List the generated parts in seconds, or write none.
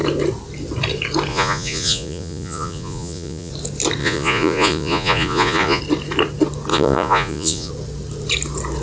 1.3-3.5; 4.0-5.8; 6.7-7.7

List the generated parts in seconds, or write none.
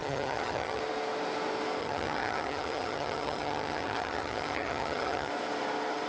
0.0-0.8; 1.8-5.3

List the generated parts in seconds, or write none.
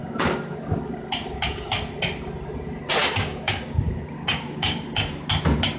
0.0-0.8; 3.0-5.3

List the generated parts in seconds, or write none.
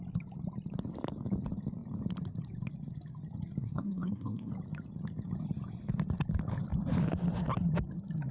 3.6-4.5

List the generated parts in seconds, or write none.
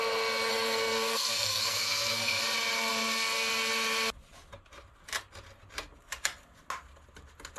0.5-2.4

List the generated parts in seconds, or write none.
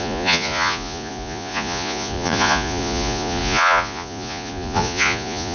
0.0-5.5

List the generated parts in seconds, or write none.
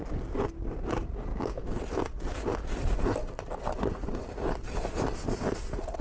1.3-1.8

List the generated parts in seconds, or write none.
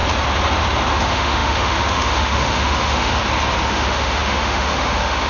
0.9-3.2; 3.7-5.3